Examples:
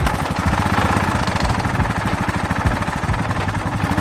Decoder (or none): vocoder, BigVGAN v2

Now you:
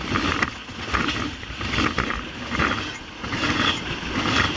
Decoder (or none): none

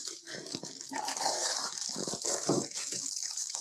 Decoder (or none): codec, DAC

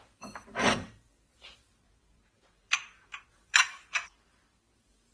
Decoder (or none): vocoder, BigVGAN v2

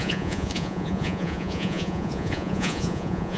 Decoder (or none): vocoder, Vocos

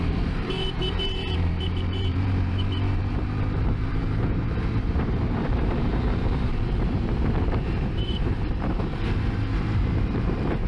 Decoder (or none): vocoder, BigVGAN v2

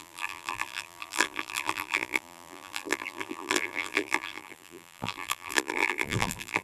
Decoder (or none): vocoder, BigVGAN v2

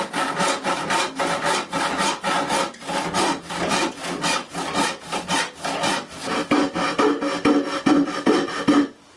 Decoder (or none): none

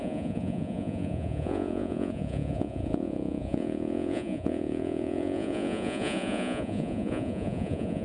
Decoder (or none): vocoder, Vocos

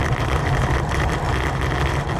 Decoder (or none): vocoder, BigVGAN v2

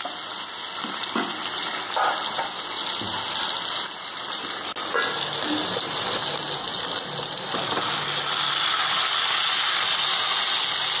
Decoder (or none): none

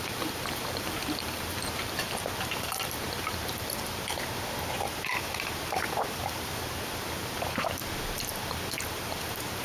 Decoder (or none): vocoder, BigVGAN v2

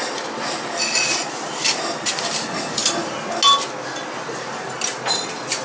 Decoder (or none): none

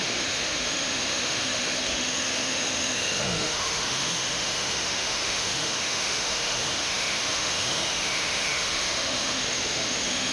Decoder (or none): autoencoder, DAC-VAE